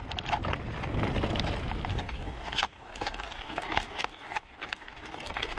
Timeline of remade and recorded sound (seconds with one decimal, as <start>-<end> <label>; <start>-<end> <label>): 0.0-1.9 recorded; 1.9-5.6 remade